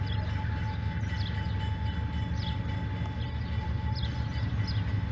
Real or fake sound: real